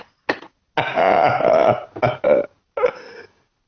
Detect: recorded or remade recorded